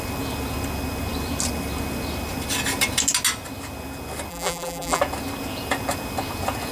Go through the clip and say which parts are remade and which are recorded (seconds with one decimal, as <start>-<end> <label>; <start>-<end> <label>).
0.0-4.3 recorded; 4.3-5.0 remade; 5.0-6.7 recorded